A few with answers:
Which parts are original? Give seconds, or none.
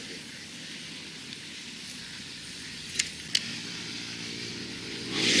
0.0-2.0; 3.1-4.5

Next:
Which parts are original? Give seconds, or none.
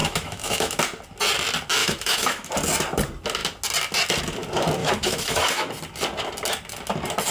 0.8-1.8; 2.5-4.8; 5.7-7.3